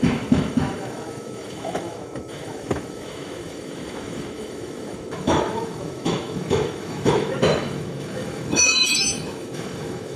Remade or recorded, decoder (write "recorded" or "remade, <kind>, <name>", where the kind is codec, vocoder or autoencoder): remade, autoencoder, DAC-VAE